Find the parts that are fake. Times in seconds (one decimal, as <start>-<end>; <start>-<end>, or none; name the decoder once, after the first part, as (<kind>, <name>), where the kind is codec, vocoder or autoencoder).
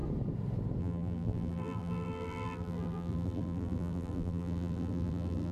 0.8-5.5 (vocoder, BigVGAN v2)